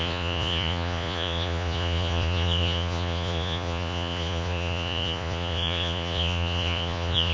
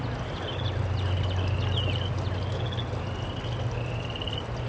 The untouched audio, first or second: second